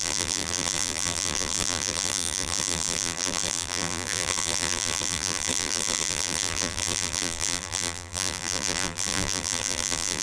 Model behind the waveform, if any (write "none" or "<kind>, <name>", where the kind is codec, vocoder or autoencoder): vocoder, BigVGAN v2